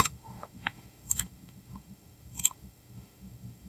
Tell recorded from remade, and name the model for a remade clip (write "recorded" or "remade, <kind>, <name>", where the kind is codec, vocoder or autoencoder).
remade, autoencoder, DAC-VAE